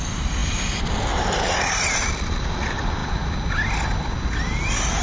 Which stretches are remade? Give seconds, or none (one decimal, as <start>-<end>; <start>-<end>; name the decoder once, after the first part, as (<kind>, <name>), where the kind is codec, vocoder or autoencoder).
none